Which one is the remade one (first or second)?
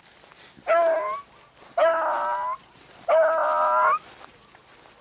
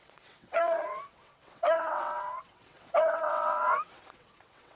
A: second